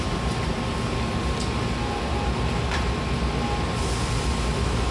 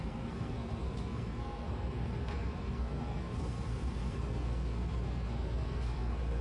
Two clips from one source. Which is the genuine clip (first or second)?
first